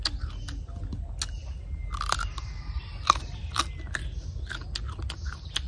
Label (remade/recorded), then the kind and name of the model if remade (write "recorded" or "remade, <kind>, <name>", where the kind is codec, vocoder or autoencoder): recorded